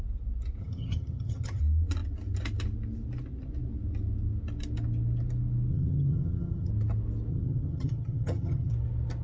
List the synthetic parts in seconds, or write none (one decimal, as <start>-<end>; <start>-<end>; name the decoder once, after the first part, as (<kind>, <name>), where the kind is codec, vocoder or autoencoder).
0.6-1.6 (vocoder, HiFi-GAN); 5.7-6.7; 7.3-8.7